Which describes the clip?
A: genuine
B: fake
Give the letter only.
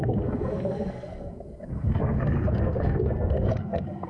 B